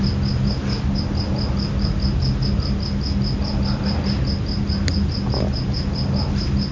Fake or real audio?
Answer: real